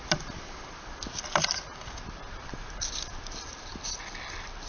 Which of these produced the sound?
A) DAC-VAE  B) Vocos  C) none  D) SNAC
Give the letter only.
C